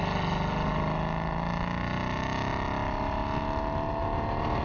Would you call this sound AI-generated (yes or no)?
no